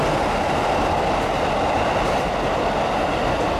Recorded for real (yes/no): yes